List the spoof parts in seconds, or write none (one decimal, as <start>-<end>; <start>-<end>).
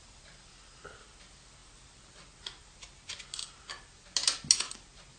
none